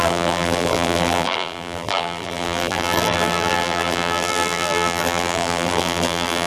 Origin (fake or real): fake